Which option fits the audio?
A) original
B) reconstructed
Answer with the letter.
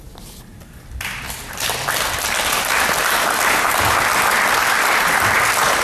A